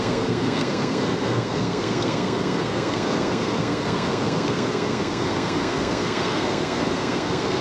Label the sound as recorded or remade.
remade